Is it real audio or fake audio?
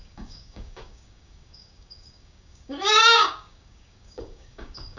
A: fake